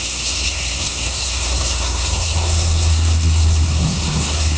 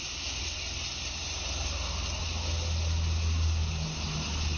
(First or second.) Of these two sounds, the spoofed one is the first